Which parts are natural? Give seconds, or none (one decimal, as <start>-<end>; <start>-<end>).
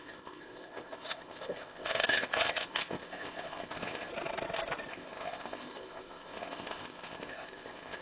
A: 4.1-4.9